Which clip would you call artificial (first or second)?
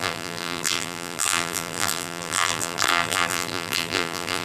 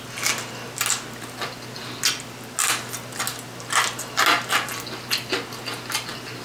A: first